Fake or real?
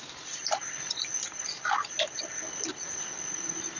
real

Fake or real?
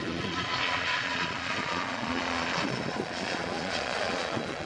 fake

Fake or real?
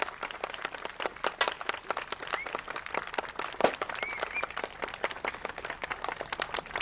real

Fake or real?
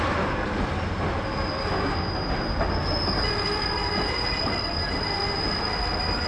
real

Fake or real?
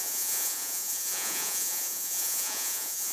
fake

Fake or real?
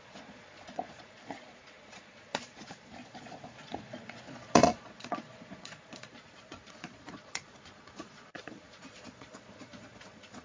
fake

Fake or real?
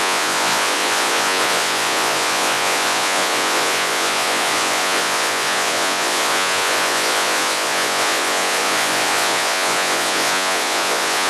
fake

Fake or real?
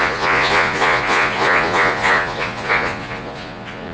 fake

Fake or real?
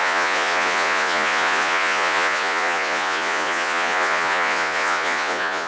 fake